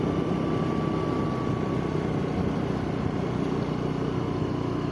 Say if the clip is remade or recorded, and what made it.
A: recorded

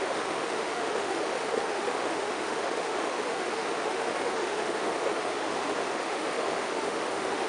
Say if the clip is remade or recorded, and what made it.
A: remade, autoencoder, DAC-VAE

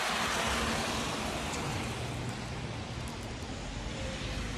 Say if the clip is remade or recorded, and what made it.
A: recorded